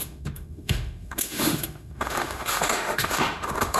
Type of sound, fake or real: fake